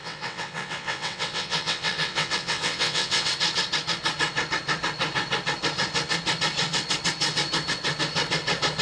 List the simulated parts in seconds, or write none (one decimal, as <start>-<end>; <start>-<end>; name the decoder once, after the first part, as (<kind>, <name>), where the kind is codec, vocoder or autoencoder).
0.0-3.3 (vocoder, WaveNeXt)